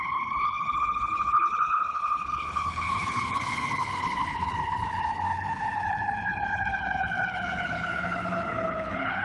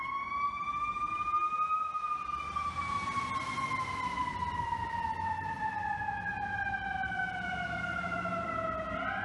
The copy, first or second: first